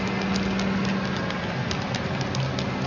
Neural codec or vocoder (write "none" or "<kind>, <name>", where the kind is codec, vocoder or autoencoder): none